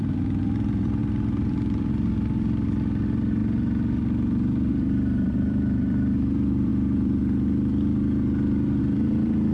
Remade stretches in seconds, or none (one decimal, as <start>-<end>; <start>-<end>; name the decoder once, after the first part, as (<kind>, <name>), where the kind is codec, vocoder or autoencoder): 0.0-3.4 (vocoder, BigVGAN v2); 4.7-6.7; 8.8-9.5